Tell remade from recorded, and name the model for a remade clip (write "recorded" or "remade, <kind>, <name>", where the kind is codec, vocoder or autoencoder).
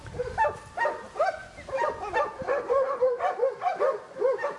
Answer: recorded